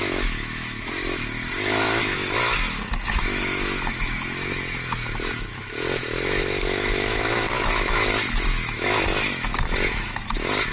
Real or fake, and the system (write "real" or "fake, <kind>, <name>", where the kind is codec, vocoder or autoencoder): fake, autoencoder, DAC-VAE